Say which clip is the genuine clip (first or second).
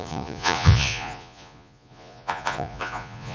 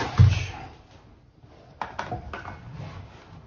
second